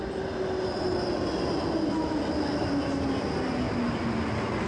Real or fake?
real